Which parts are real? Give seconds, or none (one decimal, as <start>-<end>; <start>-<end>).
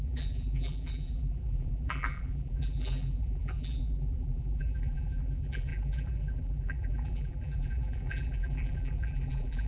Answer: none